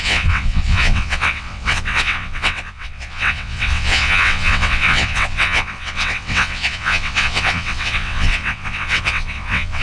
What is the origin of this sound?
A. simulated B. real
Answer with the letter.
A